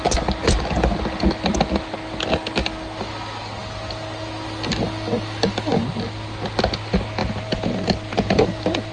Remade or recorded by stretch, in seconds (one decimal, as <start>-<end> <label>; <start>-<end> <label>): 0.0-7.2 recorded; 7.2-8.9 remade